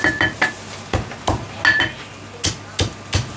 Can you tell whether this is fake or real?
real